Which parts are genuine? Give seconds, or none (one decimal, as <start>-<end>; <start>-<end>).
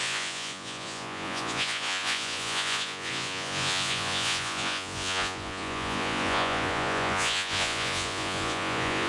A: none